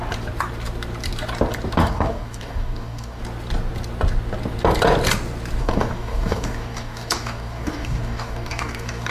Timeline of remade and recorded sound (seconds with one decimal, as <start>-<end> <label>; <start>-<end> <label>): 0.0-1.8 recorded; 1.8-3.2 remade; 3.2-5.6 recorded; 5.6-9.1 remade

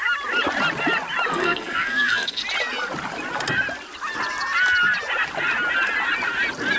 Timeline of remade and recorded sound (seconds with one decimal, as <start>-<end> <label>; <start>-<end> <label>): 0.0-1.3 recorded; 1.3-2.4 remade; 2.4-6.8 recorded

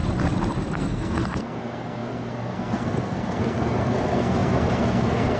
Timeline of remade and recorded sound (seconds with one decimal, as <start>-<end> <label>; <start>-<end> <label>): 0.0-0.7 recorded; 0.7-5.4 remade

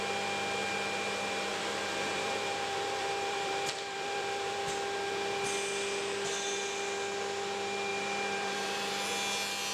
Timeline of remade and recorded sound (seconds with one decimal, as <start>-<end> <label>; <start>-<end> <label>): 0.0-1.5 recorded; 1.5-4.6 remade; 4.6-7.9 recorded; 7.9-8.9 remade; 8.9-9.7 recorded

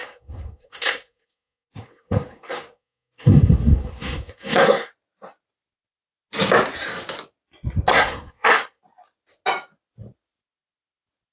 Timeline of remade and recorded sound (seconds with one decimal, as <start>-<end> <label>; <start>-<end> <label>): 0.0-4.9 remade; 4.9-7.9 recorded; 7.9-8.8 remade; 8.8-11.3 recorded

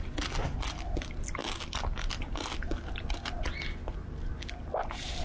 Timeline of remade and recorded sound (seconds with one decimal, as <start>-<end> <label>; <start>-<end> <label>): 0.0-5.2 recorded